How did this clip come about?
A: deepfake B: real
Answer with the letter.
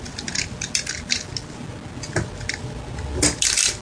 B